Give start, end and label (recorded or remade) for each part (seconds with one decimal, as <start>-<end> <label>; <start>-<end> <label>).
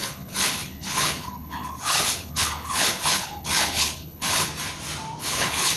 0.0-4.5 remade; 4.5-5.2 recorded; 5.2-5.8 remade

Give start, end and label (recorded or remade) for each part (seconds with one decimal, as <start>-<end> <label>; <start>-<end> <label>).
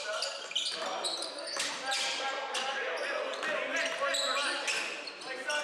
0.0-5.6 recorded